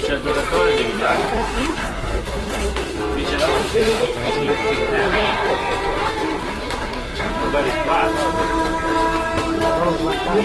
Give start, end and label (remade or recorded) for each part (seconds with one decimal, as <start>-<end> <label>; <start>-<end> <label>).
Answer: 0.0-1.0 recorded; 1.0-3.0 remade; 3.0-3.6 recorded; 3.6-4.3 remade; 4.3-5.0 recorded; 5.0-5.5 remade; 5.5-6.4 recorded; 6.4-7.3 remade; 7.3-10.4 recorded